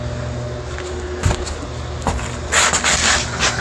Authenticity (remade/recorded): recorded